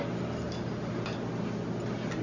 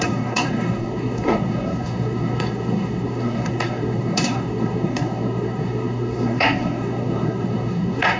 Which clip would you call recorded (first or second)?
first